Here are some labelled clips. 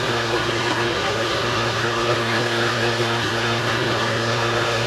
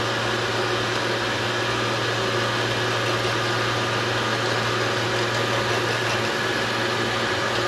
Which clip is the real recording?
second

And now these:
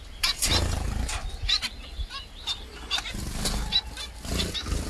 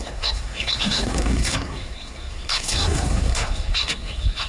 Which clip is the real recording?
first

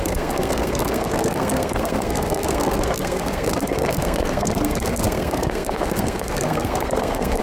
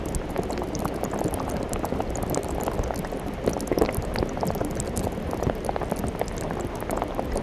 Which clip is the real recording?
second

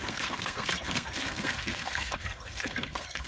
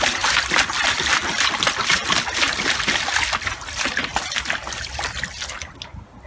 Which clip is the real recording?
second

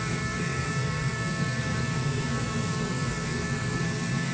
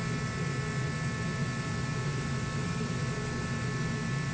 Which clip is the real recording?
second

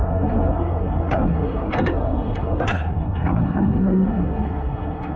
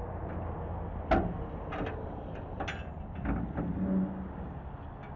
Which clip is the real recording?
second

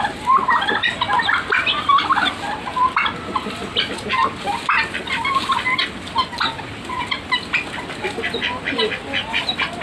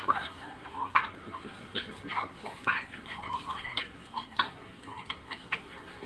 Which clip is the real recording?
first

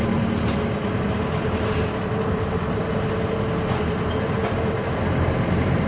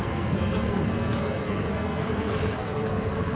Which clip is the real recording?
first